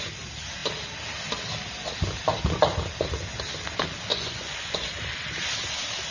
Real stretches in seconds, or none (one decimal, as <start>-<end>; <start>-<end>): 0.0-4.1; 4.9-6.1